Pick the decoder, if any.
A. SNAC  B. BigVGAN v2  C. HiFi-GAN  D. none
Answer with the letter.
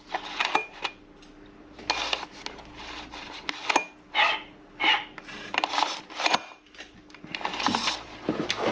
D